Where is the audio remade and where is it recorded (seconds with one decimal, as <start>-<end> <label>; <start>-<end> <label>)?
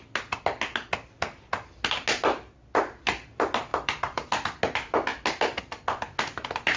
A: 0.0-3.7 recorded; 3.7-4.3 remade; 4.3-6.8 recorded